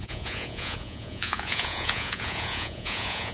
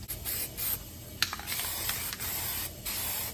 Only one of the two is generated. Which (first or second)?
first